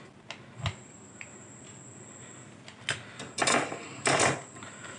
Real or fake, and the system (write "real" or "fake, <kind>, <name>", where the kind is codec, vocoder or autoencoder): real